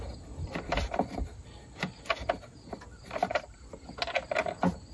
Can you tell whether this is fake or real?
real